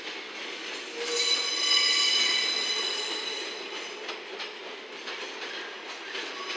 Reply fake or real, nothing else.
real